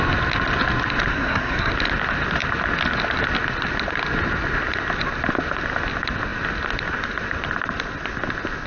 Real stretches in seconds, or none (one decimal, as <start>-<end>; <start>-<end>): 0.0-1.1; 1.7-8.7